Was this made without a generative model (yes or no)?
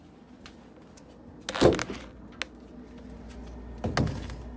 yes